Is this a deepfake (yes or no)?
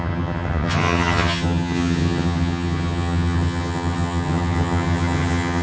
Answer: yes